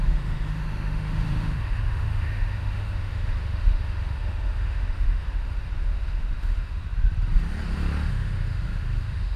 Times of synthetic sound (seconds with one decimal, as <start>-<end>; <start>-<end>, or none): 0.0-6.8; 8.1-9.4